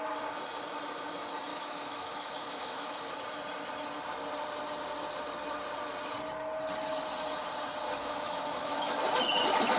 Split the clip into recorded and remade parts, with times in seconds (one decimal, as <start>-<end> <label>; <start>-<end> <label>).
0.0-1.5 recorded; 1.5-3.1 remade; 3.1-8.0 recorded; 8.0-9.0 remade; 9.0-9.8 recorded